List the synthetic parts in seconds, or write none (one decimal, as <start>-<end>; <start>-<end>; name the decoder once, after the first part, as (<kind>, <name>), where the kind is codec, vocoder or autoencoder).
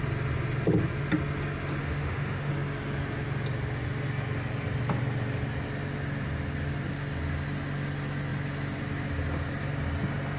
1.8-2.5 (autoencoder, DAC-VAE)